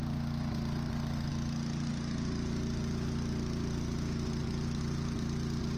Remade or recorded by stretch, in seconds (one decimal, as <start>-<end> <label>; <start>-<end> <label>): 0.0-5.8 recorded